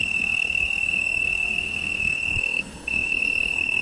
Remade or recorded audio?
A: remade